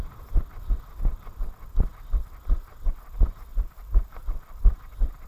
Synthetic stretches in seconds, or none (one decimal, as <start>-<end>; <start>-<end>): 3.5-4.2